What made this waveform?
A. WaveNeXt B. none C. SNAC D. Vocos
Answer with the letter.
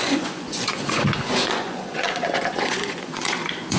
D